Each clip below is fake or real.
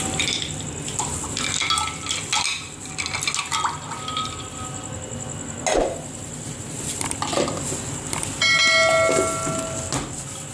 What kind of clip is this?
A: real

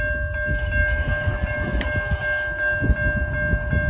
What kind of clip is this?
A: real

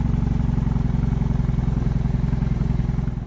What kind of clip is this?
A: real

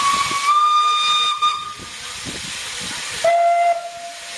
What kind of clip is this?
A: real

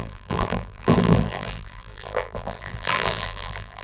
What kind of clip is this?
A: fake